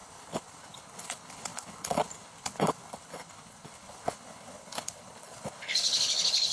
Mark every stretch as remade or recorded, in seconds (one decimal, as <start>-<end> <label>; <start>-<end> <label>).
0.0-6.5 remade